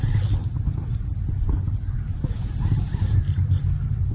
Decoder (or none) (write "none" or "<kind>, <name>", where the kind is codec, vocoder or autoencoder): none